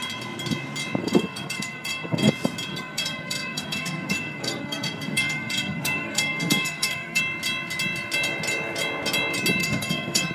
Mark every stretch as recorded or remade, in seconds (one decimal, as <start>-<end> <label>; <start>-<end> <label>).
0.0-1.0 recorded; 1.0-2.3 remade; 2.3-2.7 recorded; 2.7-7.2 remade; 7.2-9.6 recorded; 9.6-10.3 remade